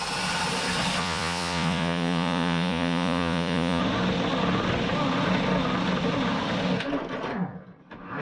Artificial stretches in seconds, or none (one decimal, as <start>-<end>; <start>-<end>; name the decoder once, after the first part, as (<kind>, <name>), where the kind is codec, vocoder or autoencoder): 1.0-3.8 (vocoder, Vocos)